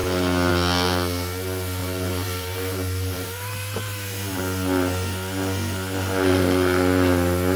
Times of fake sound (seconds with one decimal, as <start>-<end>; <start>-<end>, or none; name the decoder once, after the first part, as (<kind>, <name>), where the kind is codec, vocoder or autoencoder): 1.8-4.4 (vocoder, BigVGAN v2)